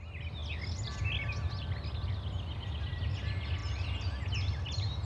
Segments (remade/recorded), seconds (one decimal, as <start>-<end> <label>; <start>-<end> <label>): 0.0-5.0 recorded